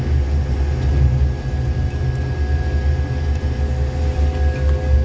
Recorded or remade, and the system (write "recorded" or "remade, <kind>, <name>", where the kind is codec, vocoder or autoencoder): recorded